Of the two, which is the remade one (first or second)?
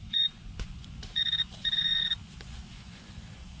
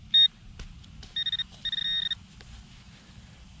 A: first